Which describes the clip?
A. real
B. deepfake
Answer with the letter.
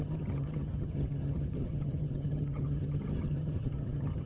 B